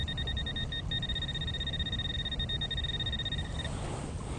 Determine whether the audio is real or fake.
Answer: real